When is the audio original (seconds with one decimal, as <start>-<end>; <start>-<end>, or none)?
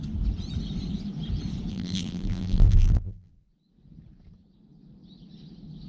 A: 0.0-1.7; 3.3-5.9